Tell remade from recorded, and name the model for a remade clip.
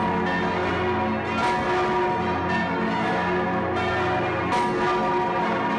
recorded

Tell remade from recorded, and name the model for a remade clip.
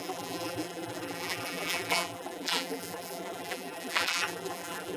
remade, vocoder, BigVGAN v2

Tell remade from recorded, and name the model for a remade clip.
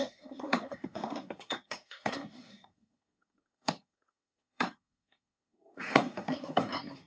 remade, codec, SNAC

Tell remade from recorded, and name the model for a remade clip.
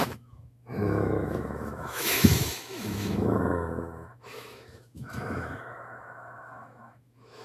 remade, autoencoder, DAC-VAE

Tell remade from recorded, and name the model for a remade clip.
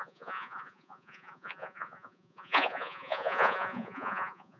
remade, vocoder, Vocos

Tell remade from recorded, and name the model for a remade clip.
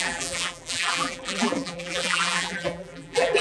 remade, vocoder, BigVGAN v2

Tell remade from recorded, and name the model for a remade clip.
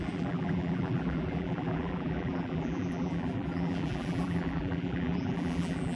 remade, vocoder, BigVGAN v2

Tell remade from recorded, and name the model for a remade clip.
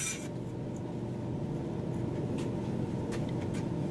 recorded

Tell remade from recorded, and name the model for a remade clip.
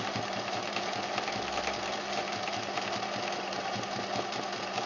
recorded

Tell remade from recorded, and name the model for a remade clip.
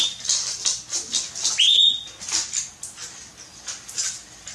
recorded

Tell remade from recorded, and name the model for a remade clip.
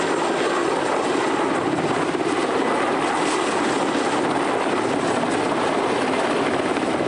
recorded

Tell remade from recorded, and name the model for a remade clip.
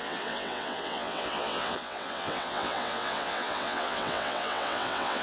remade, vocoder, WaveNeXt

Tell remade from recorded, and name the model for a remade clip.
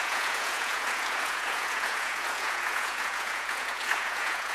remade, vocoder, Vocos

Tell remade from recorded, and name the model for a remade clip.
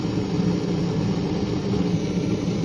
recorded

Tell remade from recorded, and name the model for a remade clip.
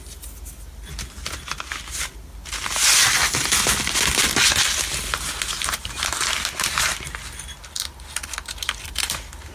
recorded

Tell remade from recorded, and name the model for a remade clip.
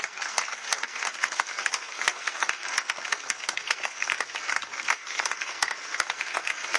remade, codec, SNAC